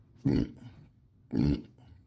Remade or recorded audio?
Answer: remade